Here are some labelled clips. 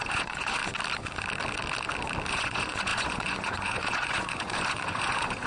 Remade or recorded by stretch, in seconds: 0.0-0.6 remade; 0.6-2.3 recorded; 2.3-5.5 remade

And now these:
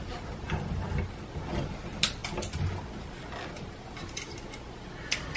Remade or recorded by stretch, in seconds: 0.0-5.4 recorded